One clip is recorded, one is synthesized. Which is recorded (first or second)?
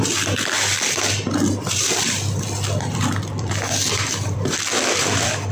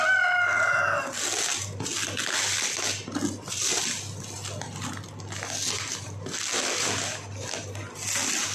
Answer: second